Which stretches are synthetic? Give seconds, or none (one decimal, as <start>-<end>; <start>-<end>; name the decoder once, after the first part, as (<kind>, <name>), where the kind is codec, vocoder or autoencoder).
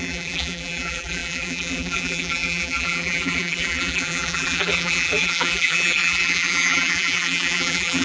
0.0-8.0 (vocoder, BigVGAN v2)